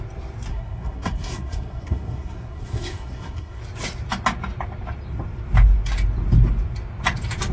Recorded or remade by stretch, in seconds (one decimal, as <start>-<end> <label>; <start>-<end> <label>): 0.0-0.5 recorded; 0.5-3.6 remade; 3.6-7.5 recorded